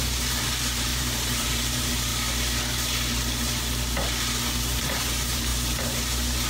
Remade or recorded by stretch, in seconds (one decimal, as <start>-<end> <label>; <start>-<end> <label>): 0.0-2.1 remade; 2.1-4.8 recorded; 4.8-6.5 remade